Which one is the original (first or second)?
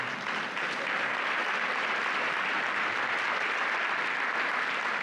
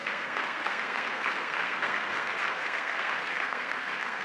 first